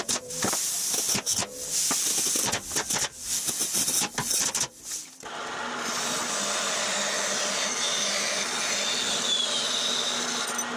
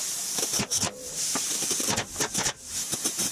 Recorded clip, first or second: first